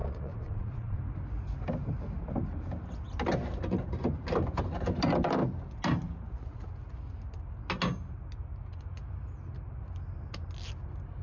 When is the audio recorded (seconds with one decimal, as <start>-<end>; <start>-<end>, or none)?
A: 1.0-11.2